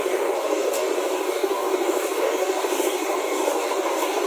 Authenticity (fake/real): fake